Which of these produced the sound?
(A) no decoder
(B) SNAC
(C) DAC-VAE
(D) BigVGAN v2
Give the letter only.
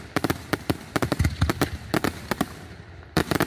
D